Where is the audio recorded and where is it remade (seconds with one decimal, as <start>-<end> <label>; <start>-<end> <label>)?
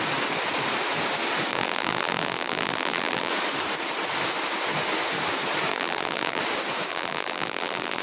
0.0-1.5 recorded; 1.5-3.3 remade; 3.3-5.7 recorded; 5.7-6.4 remade; 6.4-6.9 recorded; 6.9-8.0 remade